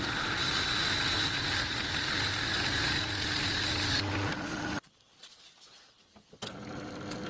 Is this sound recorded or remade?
recorded